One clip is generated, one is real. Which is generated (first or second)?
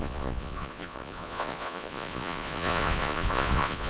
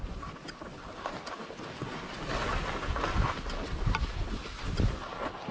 first